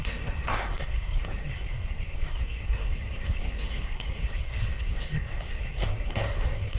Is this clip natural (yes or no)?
no